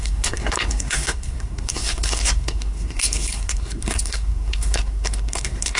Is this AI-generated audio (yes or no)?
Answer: yes